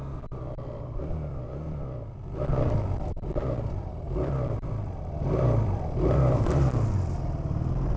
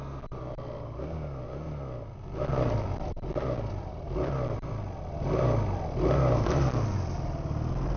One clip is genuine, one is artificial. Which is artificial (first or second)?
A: first